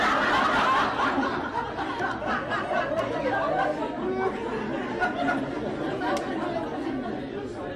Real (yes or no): yes